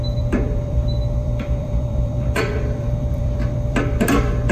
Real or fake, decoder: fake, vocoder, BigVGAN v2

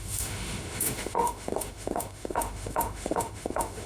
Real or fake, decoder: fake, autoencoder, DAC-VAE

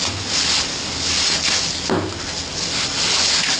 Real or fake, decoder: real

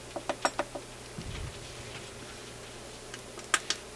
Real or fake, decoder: real